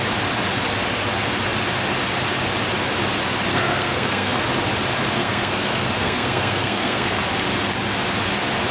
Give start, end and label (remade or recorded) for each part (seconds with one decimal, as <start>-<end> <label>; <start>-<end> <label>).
0.0-3.5 recorded; 3.5-4.4 remade; 4.4-5.2 recorded; 5.2-7.2 remade; 7.2-8.7 recorded